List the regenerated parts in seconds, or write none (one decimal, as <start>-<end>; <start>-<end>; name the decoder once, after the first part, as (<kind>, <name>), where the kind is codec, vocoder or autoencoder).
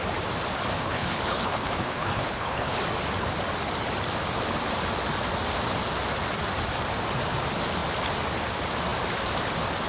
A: 0.8-2.8 (codec, HILCodec)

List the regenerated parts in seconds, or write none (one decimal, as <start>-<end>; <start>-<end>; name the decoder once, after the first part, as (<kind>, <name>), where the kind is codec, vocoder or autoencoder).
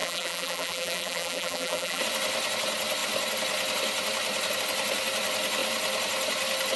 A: 0.0-2.0 (vocoder, BigVGAN v2)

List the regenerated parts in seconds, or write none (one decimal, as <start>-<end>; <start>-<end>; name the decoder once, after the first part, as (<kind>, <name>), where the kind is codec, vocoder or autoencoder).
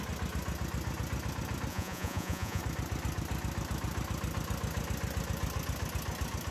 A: 1.7-2.6 (vocoder, Vocos)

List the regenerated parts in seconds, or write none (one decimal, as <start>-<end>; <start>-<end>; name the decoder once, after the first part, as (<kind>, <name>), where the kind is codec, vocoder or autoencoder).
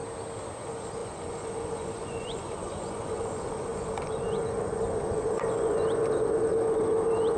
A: 0.6-7.4 (vocoder, Vocos)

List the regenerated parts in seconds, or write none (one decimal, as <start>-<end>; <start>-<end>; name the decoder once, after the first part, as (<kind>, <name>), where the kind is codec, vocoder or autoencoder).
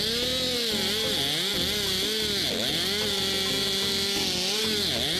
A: none